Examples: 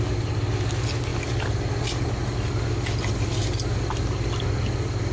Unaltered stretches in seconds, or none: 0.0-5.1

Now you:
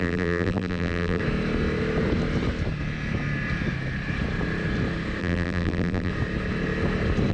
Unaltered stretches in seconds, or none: 1.2-5.2; 6.1-7.3

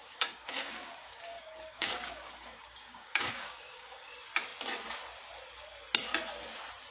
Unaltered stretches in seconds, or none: 4.1-6.9

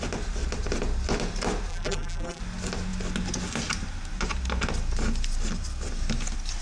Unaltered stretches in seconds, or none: 0.0-1.7; 2.4-6.6

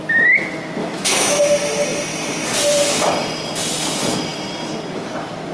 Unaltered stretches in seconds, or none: 0.0-0.8; 1.4-5.5

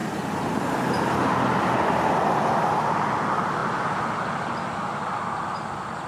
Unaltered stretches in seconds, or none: 0.0-6.1